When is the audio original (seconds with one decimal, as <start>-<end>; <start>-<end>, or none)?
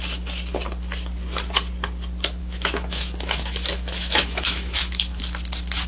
0.0-2.4; 5.2-5.9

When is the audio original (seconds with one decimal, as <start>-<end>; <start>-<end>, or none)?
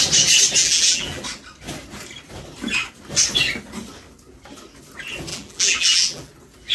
0.0-0.6; 1.2-5.3; 6.3-6.7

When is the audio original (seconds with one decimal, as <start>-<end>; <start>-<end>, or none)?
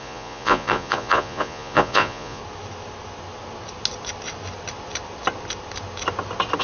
2.4-6.6